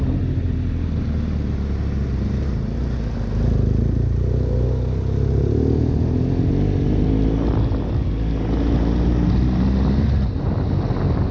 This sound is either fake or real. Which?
real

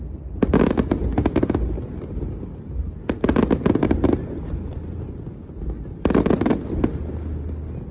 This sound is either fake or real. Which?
real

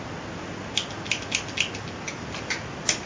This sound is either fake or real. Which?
real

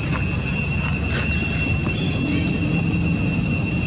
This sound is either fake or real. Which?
real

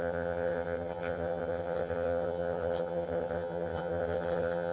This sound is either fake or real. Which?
fake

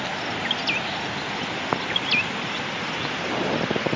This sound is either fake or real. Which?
real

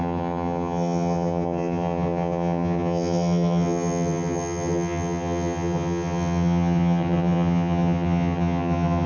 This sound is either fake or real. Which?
fake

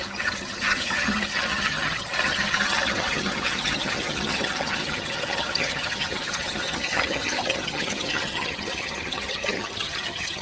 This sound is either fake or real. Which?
fake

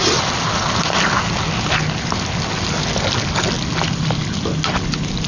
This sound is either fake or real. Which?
real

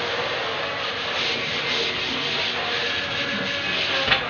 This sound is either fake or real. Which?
real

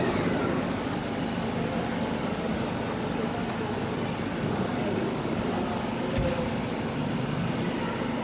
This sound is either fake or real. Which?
real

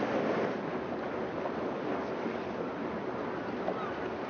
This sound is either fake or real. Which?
real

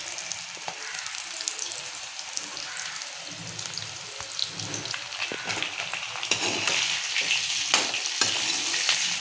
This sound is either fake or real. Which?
real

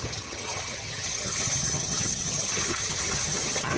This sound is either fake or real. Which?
fake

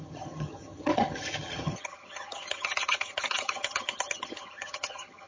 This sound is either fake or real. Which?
fake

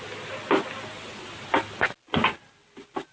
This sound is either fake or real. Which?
real